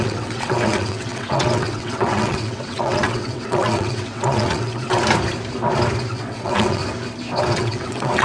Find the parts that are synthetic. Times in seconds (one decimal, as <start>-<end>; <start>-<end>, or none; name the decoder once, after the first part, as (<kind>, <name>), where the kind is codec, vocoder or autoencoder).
0.0-5.0 (vocoder, WaveNeXt); 6.1-6.8; 7.5-8.2